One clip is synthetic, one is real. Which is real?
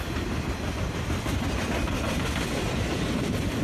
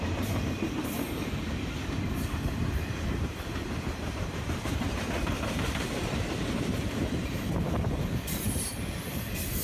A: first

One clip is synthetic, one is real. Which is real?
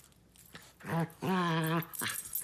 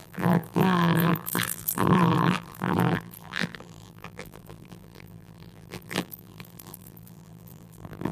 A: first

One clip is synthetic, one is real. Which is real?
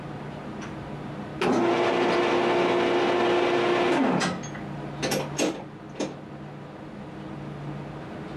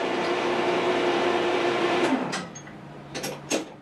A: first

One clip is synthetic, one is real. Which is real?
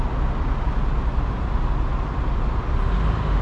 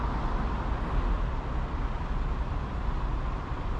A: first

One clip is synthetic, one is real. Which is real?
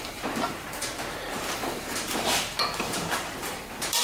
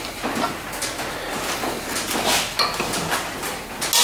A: second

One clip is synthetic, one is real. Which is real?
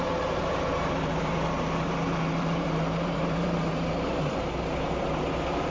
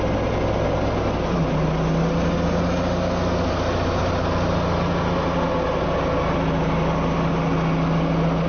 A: second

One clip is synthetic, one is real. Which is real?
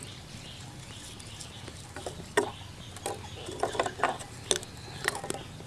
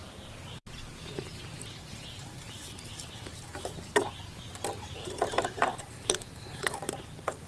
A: first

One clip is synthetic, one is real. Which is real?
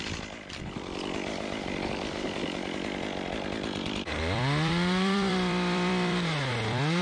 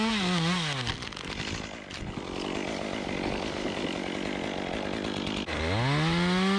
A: second